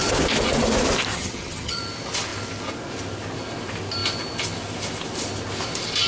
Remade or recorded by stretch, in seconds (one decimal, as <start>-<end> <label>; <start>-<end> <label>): 0.0-1.1 recorded; 1.1-1.8 remade; 1.8-6.1 recorded